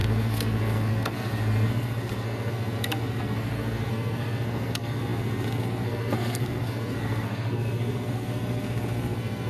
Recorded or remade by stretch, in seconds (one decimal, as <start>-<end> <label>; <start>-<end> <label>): 0.0-9.5 remade